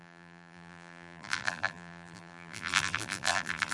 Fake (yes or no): yes